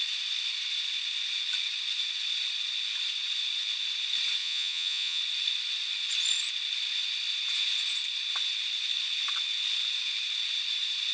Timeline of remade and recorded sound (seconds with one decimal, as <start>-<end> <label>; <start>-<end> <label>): 0.0-4.4 recorded; 4.4-5.2 remade; 5.2-11.1 recorded